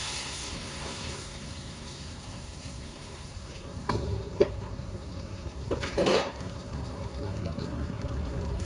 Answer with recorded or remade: remade